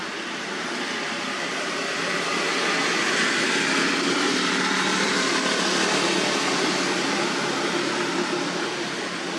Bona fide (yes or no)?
yes